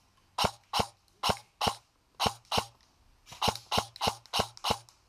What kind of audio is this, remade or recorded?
recorded